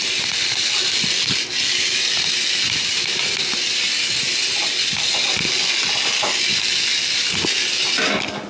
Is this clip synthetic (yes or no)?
no